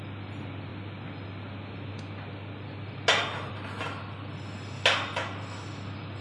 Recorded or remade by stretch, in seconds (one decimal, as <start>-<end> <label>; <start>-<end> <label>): 0.0-6.2 recorded